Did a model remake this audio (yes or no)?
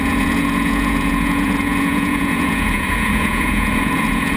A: yes